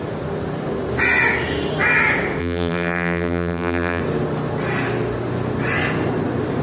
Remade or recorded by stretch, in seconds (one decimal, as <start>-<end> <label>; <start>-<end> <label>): 0.0-2.4 recorded; 2.4-4.0 remade; 4.0-6.6 recorded